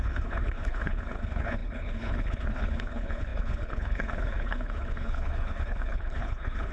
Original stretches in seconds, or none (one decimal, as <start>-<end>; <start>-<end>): none